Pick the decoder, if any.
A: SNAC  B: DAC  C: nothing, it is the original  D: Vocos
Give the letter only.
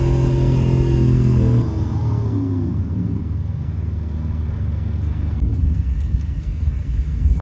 A